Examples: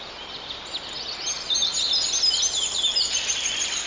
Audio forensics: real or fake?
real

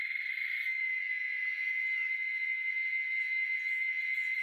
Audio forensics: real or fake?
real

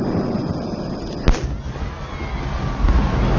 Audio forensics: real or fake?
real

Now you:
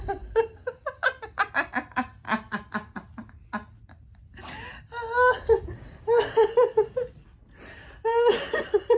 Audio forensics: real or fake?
real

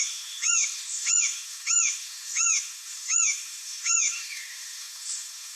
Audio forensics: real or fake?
fake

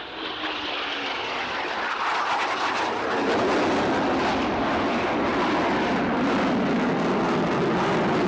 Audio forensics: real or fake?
real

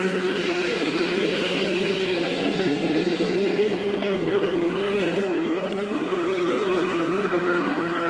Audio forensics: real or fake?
fake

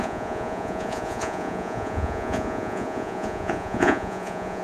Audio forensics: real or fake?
fake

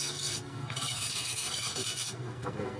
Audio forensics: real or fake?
fake